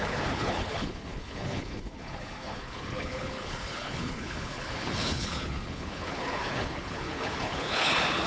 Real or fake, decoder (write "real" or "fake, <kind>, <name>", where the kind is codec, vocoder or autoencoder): fake, codec, HILCodec